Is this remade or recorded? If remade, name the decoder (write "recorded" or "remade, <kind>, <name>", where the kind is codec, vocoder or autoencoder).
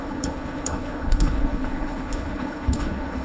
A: remade, codec, HILCodec